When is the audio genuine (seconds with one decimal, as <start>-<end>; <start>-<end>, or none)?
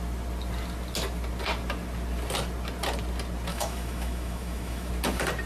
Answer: 0.0-3.5; 4.9-5.5